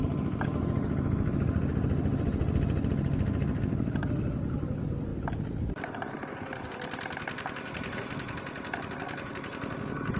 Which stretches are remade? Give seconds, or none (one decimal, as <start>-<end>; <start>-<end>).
none

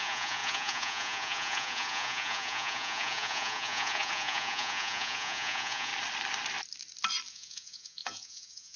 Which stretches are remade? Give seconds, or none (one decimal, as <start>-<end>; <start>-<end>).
0.0-5.9; 7.3-8.8

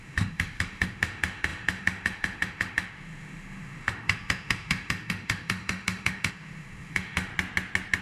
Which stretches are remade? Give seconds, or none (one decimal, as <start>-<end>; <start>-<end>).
0.0-7.3